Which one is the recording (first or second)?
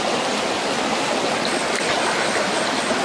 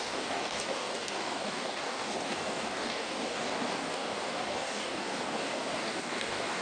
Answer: first